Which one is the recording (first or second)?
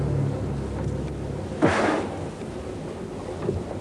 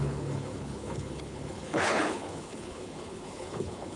first